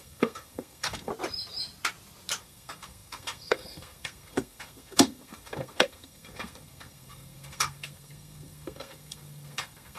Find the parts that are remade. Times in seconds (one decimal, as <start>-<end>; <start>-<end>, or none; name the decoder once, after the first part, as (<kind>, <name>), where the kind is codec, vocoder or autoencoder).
0.0-1.1 (codec, SNAC); 2.4-10.0